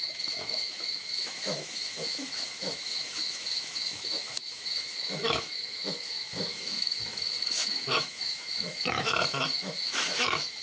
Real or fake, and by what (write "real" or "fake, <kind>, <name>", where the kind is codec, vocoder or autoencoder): fake, autoencoder, DAC-VAE